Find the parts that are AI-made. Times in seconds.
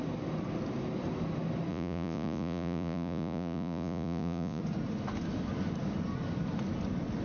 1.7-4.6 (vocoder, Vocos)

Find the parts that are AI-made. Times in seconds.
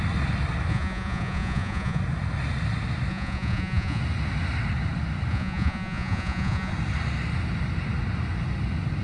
0.7-2.0 (vocoder, Vocos); 3.1-4.0; 5.3-6.7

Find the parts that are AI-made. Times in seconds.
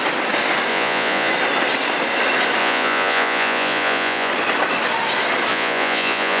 0.7-1.3 (vocoder, Vocos); 2.6-4.3; 5.5-6.4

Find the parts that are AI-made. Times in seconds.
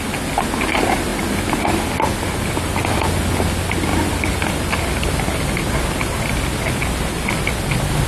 none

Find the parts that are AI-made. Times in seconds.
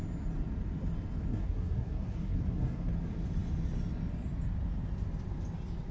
1.3-2.9 (codec, SNAC)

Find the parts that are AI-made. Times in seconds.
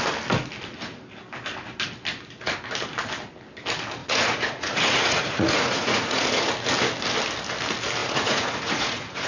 4.0-6.5 (vocoder, Vocos); 8.0-9.3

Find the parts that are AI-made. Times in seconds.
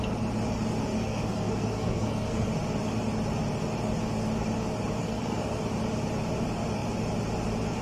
0.9-2.5 (codec, SNAC); 5.0-5.6